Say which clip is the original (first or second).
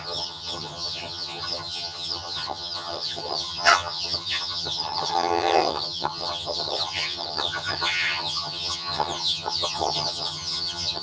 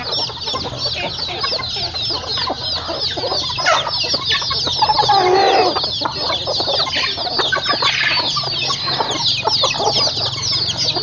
second